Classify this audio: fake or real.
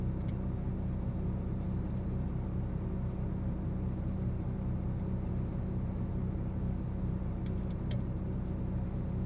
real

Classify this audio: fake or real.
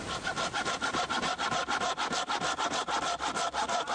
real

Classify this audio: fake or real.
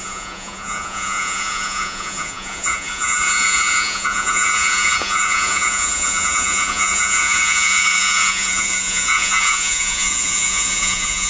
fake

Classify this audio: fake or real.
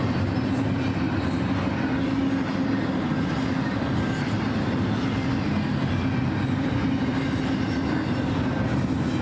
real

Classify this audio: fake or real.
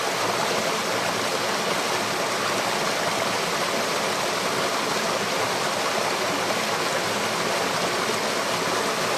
real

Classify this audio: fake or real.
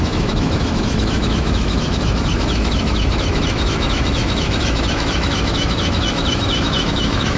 fake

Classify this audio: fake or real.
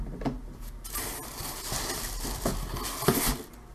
real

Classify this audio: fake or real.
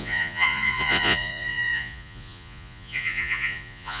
fake